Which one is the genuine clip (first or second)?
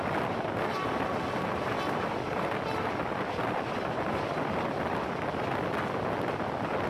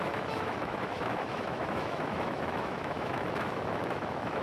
first